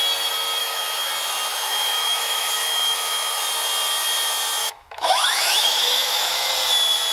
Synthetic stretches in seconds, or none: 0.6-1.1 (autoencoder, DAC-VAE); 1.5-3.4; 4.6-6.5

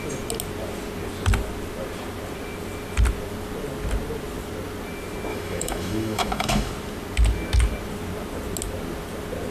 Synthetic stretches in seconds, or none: 5.3-6.7 (autoencoder, DAC-VAE)

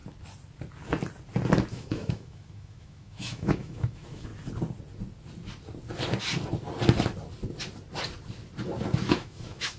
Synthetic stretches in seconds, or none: 1.7-4.3 (autoencoder, DAC-VAE); 9.1-9.8

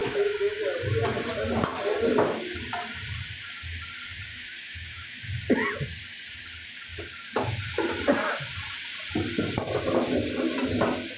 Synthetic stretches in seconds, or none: 0.0-0.6 (autoencoder, DAC-VAE); 4.3-5.3

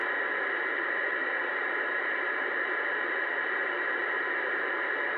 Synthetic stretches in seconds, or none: none

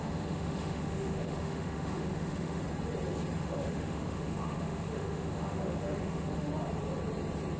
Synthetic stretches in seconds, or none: 0.0-2.6 (autoencoder, DAC-VAE); 3.4-6.5